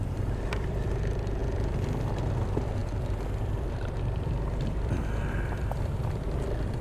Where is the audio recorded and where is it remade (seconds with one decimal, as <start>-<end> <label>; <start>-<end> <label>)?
0.0-6.8 remade